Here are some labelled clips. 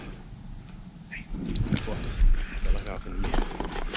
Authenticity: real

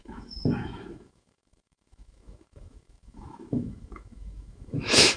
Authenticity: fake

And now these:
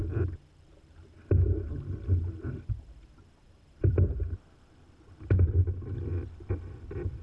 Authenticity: real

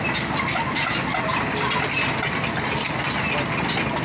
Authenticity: real